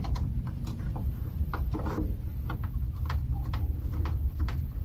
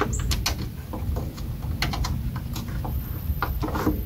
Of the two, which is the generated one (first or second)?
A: first